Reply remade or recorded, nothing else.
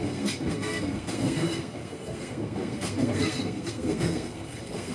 remade